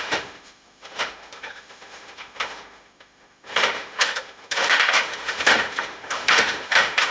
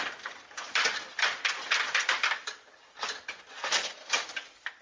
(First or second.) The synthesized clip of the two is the first